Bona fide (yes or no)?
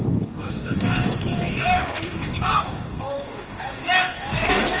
no